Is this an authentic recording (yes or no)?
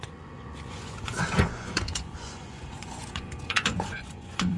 no